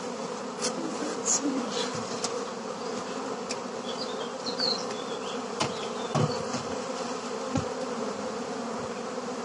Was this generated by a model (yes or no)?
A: no